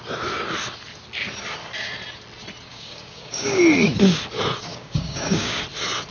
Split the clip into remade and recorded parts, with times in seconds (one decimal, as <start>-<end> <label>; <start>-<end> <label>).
0.0-2.7 recorded; 2.7-3.6 remade; 3.6-4.7 recorded; 4.7-5.6 remade; 5.6-6.1 recorded